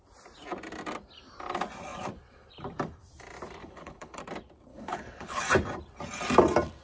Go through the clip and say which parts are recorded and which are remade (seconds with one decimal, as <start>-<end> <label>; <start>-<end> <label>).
0.0-3.6 recorded; 3.6-4.2 remade; 4.2-4.7 recorded; 4.7-5.4 remade; 5.4-6.8 recorded